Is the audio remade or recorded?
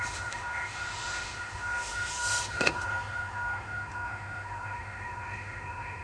remade